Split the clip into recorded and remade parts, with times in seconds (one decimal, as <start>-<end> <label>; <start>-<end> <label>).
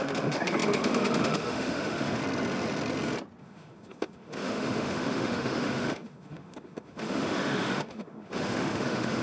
0.0-2.2 remade; 2.2-3.4 recorded; 3.4-9.2 remade